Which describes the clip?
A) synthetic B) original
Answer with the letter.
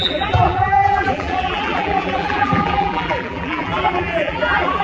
A